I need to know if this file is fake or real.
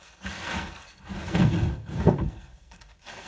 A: fake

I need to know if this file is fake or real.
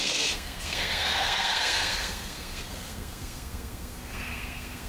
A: fake